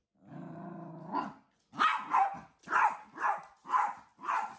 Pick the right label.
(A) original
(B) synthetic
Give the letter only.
A